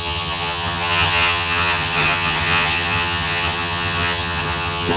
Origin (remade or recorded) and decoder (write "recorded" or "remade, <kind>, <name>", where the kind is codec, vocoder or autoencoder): remade, vocoder, HiFi-GAN